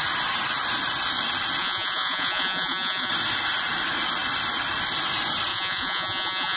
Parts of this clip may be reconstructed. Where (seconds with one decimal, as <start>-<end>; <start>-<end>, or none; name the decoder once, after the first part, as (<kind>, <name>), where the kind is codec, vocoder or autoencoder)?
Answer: 1.6-3.1 (vocoder, Vocos); 5.5-6.6